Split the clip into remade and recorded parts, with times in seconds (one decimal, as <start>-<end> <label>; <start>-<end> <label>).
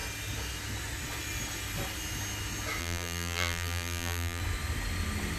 0.0-2.8 recorded; 2.8-4.4 remade; 4.4-5.4 recorded